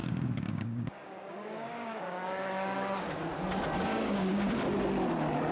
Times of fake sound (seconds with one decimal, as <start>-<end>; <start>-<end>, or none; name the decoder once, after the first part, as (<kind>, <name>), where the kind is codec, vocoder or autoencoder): 0.0-3.3 (codec, DAC); 3.9-4.5